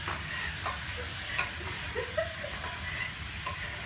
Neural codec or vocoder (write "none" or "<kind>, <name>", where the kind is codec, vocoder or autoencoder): none